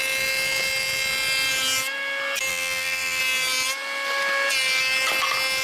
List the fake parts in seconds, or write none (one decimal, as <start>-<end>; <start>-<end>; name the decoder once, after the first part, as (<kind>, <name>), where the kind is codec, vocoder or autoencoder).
2.5-3.2 (vocoder, BigVGAN v2)